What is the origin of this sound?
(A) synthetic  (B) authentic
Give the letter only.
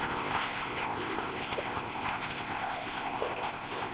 A